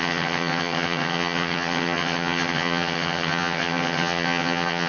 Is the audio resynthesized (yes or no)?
yes